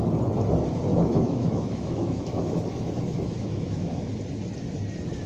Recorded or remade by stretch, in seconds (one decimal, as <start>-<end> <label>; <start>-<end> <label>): 0.0-0.9 recorded; 0.9-4.1 remade; 4.1-5.3 recorded